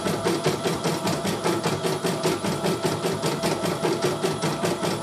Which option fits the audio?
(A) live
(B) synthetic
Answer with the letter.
B